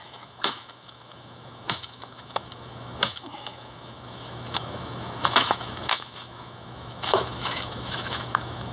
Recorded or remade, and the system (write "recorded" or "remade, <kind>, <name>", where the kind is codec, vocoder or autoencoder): remade, autoencoder, DAC-VAE